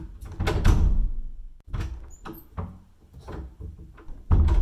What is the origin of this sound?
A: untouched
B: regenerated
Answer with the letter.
A